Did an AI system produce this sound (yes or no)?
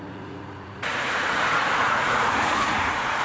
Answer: yes